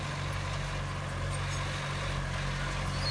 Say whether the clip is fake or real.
real